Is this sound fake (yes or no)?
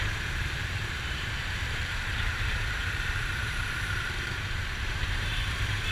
yes